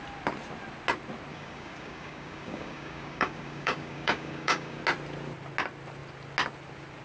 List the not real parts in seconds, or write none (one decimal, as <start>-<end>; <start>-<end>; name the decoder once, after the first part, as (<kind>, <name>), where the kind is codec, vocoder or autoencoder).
1.3-4.8 (codec, DAC)